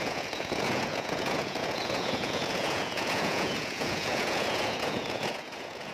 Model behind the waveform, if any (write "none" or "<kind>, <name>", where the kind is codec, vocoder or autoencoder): vocoder, Vocos